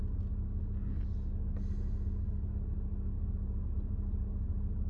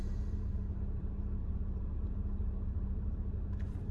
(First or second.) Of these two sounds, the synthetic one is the second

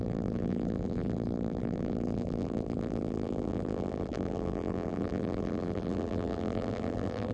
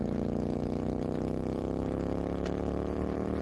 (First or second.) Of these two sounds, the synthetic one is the first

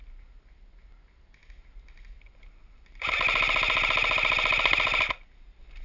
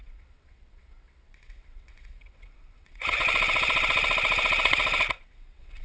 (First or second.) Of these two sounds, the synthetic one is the second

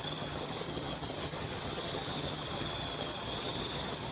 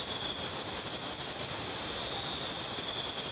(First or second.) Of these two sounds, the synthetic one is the first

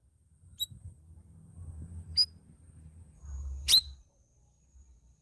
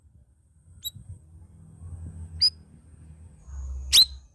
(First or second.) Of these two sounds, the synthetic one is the first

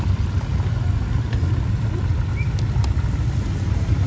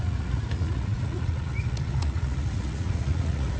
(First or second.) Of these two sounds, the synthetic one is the second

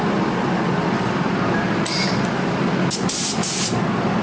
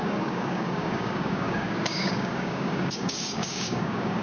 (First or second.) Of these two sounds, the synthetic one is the second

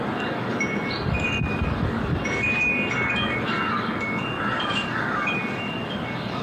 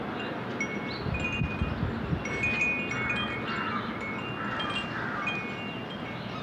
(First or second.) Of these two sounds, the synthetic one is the first